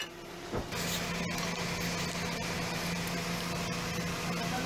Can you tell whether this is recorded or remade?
recorded